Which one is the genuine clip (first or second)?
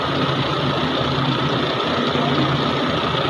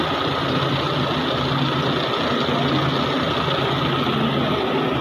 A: second